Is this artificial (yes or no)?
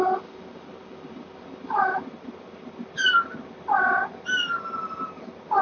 no